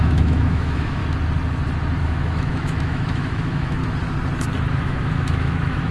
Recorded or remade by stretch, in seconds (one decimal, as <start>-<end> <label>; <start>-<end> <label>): 0.0-1.0 remade; 1.0-2.0 recorded; 2.0-3.8 remade; 3.8-4.7 recorded; 4.7-5.9 remade